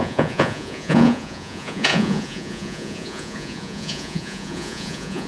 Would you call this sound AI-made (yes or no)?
yes